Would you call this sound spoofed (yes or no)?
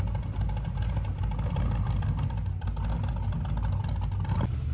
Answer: no